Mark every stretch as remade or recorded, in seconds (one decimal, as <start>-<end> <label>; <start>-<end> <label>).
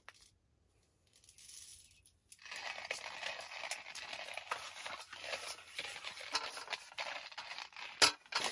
0.0-8.5 recorded